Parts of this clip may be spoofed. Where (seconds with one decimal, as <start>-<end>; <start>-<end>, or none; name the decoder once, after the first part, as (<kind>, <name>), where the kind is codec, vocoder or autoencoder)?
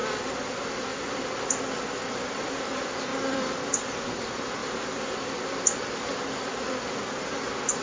0.0-0.5 (vocoder, BigVGAN v2); 0.9-2.6; 3.1-3.6; 4.6-5.2